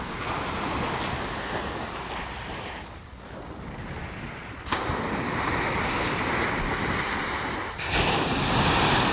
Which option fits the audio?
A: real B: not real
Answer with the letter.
A